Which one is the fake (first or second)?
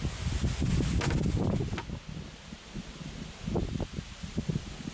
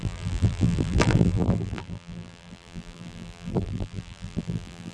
second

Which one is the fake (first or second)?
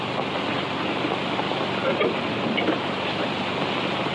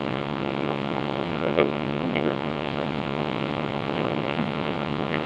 second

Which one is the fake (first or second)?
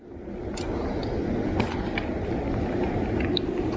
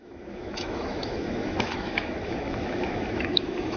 second